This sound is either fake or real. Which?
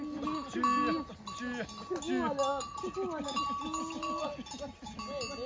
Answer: real